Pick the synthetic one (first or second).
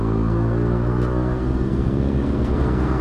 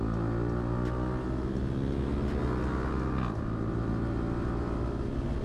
first